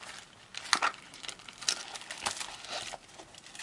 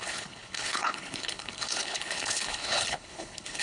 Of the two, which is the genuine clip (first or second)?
first